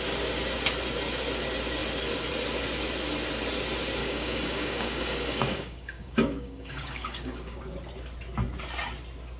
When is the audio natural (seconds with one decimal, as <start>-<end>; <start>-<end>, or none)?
0.0-4.0; 7.6-9.4